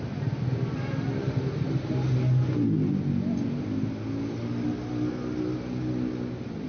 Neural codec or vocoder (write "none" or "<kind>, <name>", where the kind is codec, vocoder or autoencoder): none